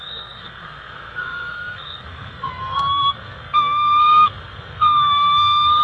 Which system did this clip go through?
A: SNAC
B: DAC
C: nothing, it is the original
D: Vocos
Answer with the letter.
A